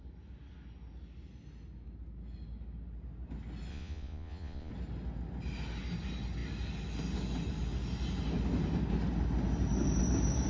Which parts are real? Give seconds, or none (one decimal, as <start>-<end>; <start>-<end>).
0.0-3.7; 4.7-10.5